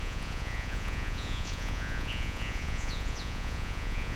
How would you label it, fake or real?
fake